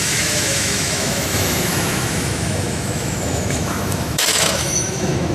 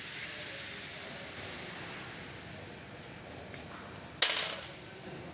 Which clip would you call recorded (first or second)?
second